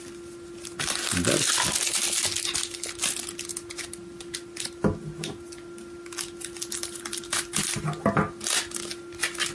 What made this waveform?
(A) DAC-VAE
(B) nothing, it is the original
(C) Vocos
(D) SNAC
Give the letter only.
B